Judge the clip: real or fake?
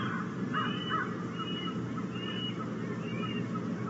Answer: real